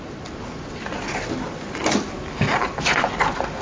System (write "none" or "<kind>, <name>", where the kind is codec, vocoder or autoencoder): none